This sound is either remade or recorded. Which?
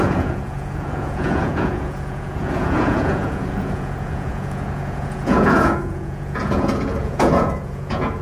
remade